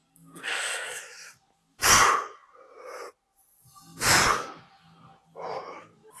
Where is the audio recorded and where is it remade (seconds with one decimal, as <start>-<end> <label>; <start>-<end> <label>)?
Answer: 0.0-1.0 remade; 1.0-6.2 recorded